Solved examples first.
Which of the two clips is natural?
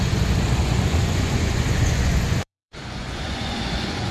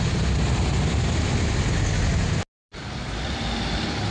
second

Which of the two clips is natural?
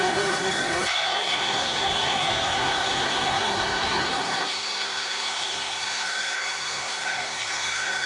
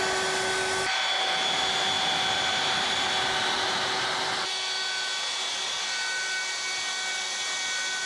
second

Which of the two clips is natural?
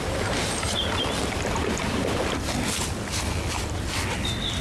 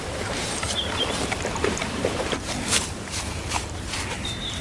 first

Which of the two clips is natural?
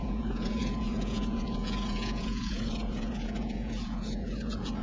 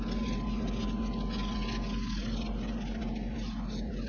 second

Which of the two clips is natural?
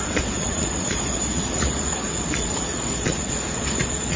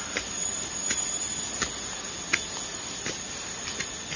second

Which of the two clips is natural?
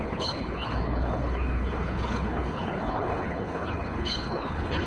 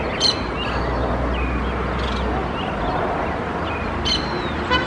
second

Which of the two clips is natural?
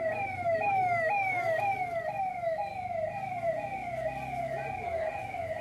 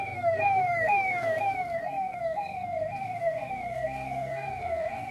first